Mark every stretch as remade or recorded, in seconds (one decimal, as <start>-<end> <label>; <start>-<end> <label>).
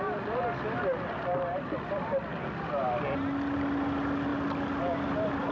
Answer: 0.0-5.5 recorded